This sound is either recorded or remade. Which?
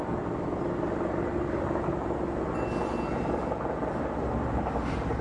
recorded